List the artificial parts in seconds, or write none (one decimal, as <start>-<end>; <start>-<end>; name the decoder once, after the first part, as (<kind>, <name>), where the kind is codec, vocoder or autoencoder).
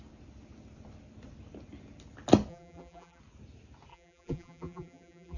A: 2.5-3.2 (vocoder, BigVGAN v2); 3.9-5.4